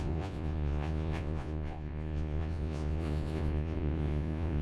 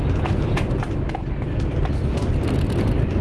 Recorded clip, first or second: second